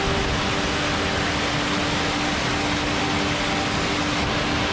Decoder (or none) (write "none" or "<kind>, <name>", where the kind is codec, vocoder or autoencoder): none